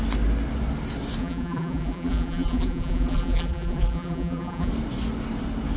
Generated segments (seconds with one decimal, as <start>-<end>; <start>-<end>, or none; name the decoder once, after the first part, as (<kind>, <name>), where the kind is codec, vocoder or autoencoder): 1.2-4.7 (vocoder, BigVGAN v2)